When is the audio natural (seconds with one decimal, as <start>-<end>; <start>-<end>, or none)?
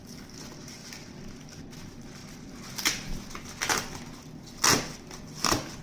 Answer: 0.0-5.8